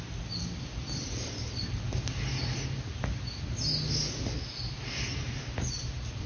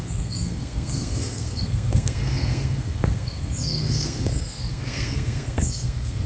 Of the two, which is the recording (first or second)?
first